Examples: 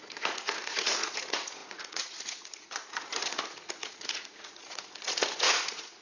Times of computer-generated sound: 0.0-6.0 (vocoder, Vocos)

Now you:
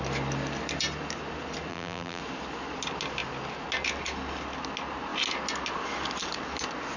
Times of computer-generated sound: 1.7-2.2 (vocoder, BigVGAN v2)

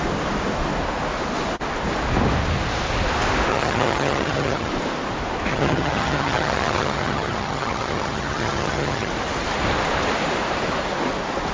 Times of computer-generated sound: 3.5-4.7 (vocoder, HiFi-GAN); 5.5-9.1

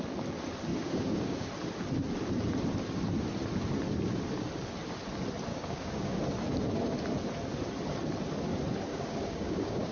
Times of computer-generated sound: 0.7-1.5 (codec, DAC); 5.5-6.2; 8.9-9.9

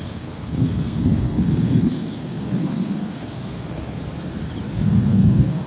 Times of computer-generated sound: 0.0-4.0 (codec, SNAC); 4.7-5.7

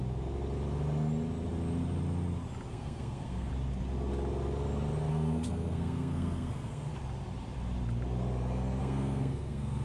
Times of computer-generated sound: 2.7-3.5 (codec, SNAC); 5.1-6.9; 8.8-9.8

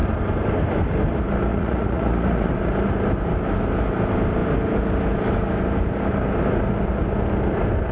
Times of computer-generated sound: 1.5-2.5 (vocoder, Vocos)

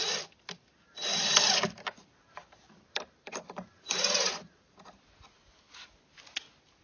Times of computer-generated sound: 2.4-5.1 (vocoder, BigVGAN v2)